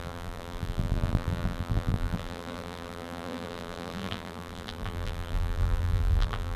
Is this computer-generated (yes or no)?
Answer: yes